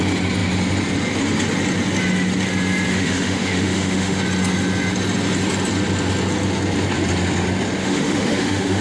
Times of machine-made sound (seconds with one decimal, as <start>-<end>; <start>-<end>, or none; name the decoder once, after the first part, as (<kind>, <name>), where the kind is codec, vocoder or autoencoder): 2.9-4.2 (autoencoder, DAC-VAE); 7.8-8.8